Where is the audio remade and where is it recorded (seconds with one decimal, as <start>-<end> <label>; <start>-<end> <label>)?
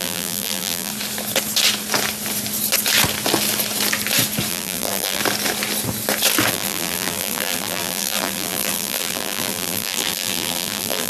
0.0-0.9 remade; 0.9-4.5 recorded; 4.5-5.2 remade; 5.2-6.5 recorded; 6.5-11.1 remade